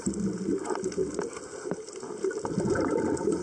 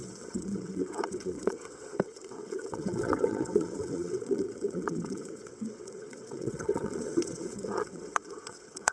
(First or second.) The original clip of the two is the first